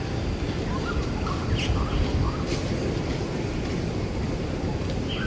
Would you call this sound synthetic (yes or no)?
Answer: no